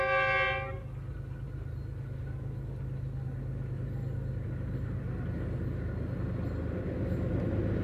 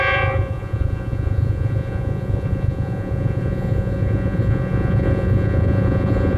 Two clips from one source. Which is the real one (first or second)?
first